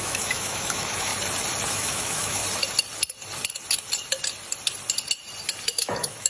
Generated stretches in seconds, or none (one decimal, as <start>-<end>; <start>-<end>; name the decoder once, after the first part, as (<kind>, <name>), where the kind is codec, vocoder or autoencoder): 0.0-1.1 (autoencoder, DAC-VAE); 1.7-2.4; 5.7-6.3